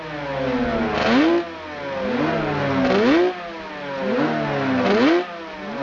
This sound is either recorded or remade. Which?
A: recorded